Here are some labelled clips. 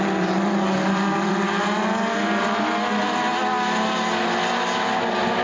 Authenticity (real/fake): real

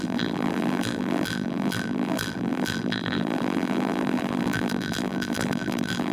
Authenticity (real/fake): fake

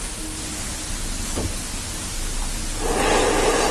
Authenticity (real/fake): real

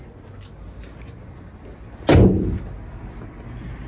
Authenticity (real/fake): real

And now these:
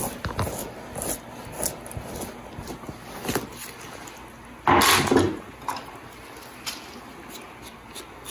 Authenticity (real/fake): real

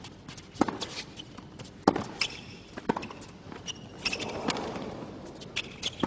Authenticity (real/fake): real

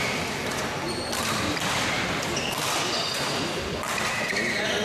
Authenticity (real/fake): real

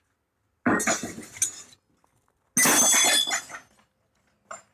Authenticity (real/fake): real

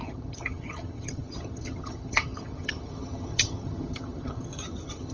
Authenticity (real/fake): fake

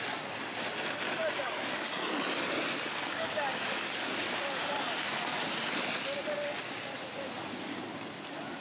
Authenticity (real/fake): real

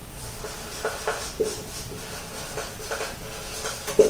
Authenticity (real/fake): fake